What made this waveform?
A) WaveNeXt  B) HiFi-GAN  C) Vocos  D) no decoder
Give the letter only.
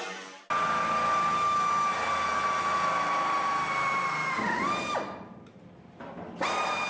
D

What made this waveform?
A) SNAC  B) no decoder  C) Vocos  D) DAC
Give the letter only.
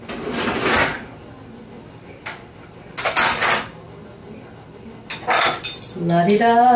B